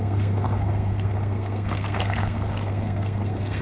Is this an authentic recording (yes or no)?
no